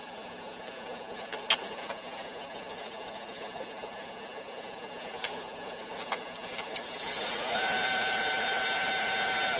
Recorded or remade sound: recorded